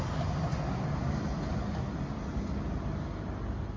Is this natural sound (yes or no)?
yes